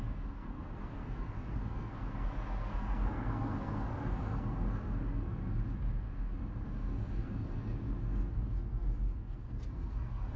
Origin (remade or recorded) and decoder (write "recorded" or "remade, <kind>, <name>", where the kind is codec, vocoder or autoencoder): remade, codec, SNAC